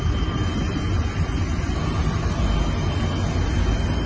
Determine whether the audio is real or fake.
real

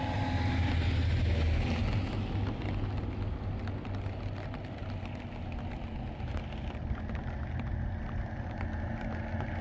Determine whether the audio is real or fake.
real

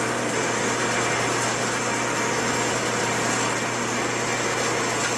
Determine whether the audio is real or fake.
real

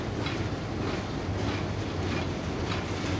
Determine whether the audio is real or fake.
real